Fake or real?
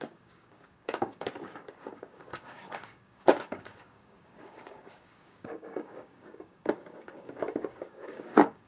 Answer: fake